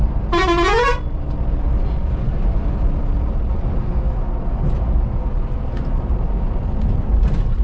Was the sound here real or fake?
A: real